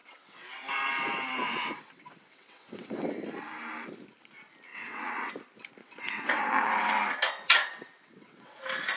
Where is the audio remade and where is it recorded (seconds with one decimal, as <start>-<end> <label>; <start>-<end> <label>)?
0.0-3.1 remade; 3.1-4.7 recorded; 4.7-5.3 remade; 5.3-5.8 recorded; 5.8-6.9 remade; 6.9-7.4 recorded; 7.4-8.6 remade; 8.6-9.0 recorded